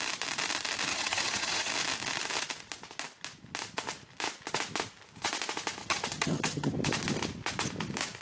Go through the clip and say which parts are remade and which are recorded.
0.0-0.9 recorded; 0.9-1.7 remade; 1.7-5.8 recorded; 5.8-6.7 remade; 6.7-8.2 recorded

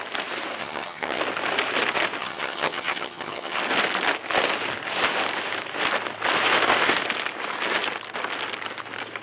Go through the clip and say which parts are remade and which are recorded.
0.0-0.6 recorded; 0.6-1.2 remade; 1.2-2.2 recorded; 2.2-3.6 remade; 3.6-9.2 recorded

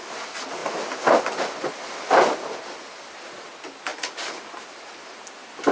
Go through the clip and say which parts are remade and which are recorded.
0.0-5.7 recorded